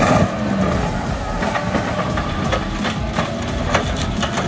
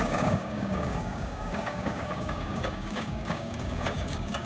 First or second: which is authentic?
first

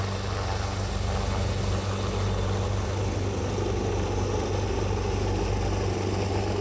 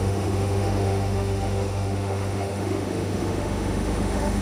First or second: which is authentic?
first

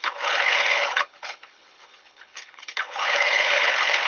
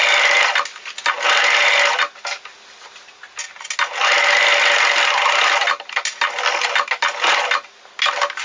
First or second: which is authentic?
second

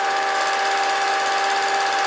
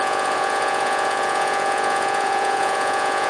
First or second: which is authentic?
first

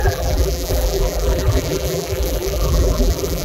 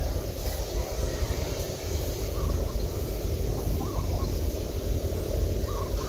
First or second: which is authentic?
second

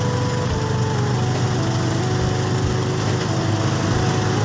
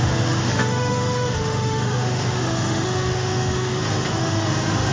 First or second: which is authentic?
first